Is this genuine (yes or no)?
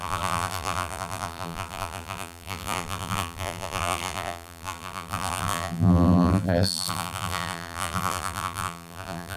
no